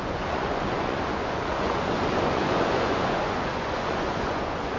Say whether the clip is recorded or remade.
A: remade